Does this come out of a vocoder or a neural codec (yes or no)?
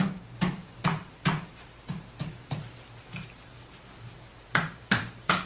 yes